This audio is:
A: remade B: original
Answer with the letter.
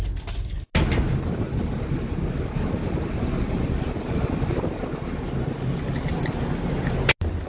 B